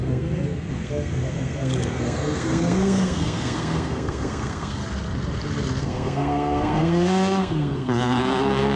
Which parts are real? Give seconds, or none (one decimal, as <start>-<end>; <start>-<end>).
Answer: 4.8-5.8